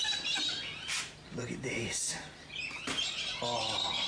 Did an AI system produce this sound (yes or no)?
no